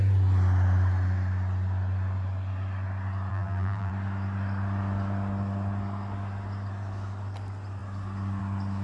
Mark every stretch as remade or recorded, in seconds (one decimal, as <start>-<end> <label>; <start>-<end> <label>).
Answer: 0.0-3.3 recorded; 3.3-3.9 remade; 3.9-8.8 recorded